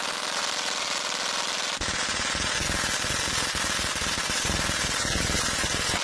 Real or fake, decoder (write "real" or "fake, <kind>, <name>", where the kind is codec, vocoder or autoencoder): real